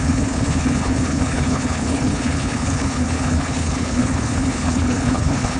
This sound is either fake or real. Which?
fake